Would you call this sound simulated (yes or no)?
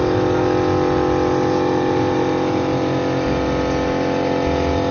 no